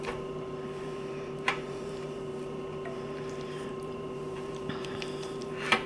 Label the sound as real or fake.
fake